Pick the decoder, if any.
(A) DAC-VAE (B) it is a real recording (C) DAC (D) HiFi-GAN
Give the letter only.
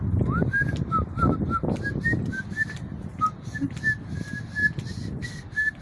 B